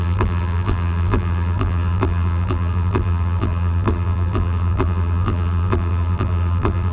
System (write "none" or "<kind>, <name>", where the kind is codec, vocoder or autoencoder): vocoder, BigVGAN v2